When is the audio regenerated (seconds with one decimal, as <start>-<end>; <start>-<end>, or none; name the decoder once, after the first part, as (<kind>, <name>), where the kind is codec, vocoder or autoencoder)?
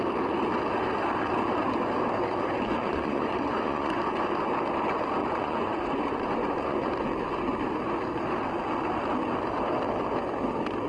2.2-4.1 (vocoder, Vocos); 5.2-6.9